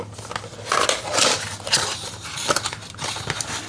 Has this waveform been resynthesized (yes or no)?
no